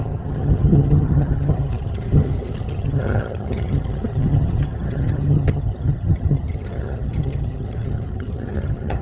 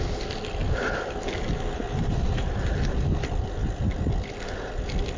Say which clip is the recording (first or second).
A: second